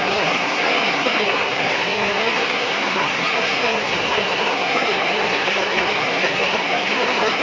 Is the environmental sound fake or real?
fake